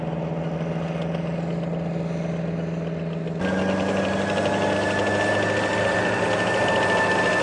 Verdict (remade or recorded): recorded